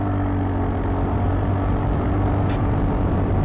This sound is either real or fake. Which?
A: real